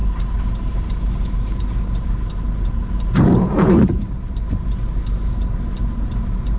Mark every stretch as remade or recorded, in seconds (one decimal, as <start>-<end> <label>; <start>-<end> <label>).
0.0-6.6 remade